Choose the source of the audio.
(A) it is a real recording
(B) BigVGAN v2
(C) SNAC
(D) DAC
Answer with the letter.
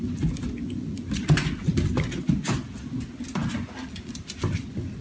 A